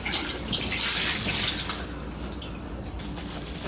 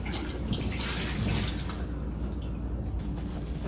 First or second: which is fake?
first